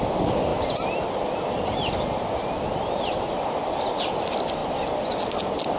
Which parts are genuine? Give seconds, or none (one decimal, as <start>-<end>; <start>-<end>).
0.5-4.0; 4.6-5.8